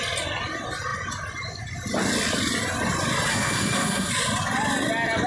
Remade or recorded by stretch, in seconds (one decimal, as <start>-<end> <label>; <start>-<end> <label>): 0.0-3.3 recorded; 3.3-4.1 remade; 4.1-5.3 recorded